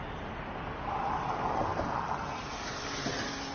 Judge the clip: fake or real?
real